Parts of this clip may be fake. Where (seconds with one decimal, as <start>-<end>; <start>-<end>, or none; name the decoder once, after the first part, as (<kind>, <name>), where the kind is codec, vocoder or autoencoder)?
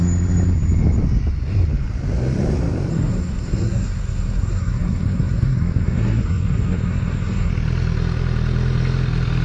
2.9-7.5 (codec, SNAC)